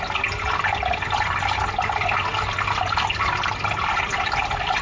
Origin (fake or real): real